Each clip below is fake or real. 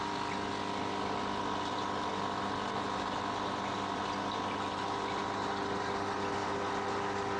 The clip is real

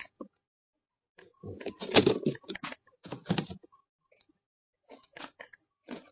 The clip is fake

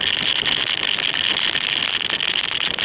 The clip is real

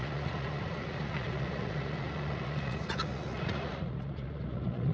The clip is fake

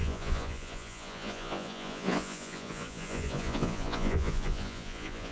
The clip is fake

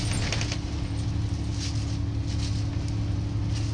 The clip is real